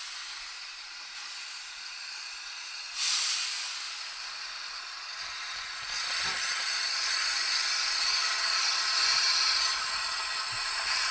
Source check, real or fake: real